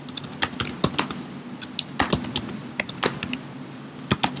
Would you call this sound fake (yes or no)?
no